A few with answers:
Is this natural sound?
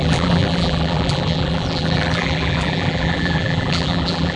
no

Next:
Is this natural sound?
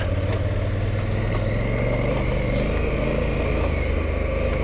yes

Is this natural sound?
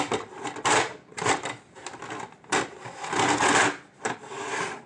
yes